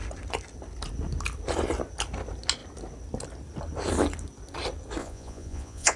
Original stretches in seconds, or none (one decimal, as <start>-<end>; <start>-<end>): 0.0-5.0